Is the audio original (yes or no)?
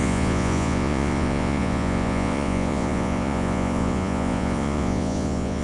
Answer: no